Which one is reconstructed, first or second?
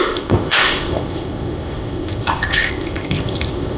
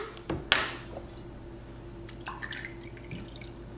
first